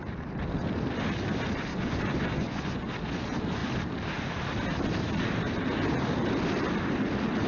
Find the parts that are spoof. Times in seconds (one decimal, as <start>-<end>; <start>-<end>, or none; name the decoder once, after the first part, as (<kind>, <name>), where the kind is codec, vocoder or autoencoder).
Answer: 1.7-2.9 (vocoder, Vocos)